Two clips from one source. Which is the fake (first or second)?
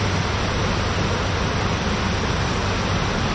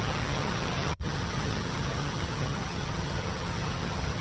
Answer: second